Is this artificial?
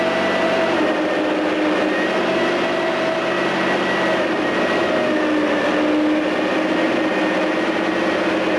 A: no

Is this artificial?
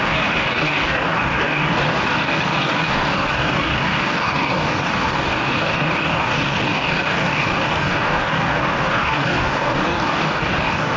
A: yes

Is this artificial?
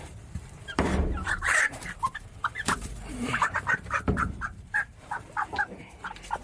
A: yes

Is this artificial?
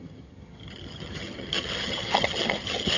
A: yes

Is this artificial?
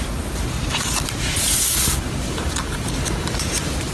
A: yes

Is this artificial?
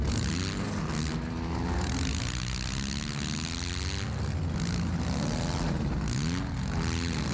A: no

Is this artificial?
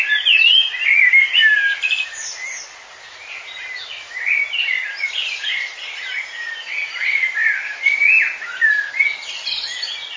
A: no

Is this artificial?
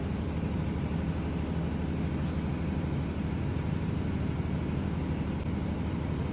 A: no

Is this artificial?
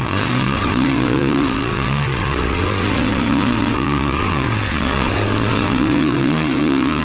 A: yes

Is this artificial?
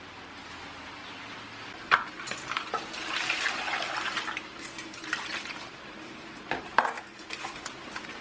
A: no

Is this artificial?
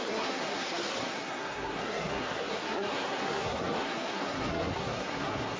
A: yes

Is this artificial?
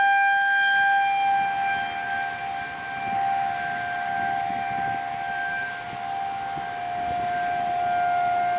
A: no